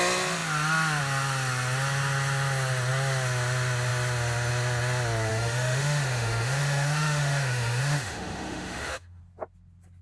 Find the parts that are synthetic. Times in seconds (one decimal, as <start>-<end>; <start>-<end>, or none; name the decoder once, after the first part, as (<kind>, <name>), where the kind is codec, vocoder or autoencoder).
5.3-9.2 (autoencoder, DAC-VAE)